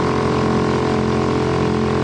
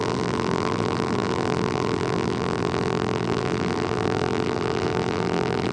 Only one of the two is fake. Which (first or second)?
second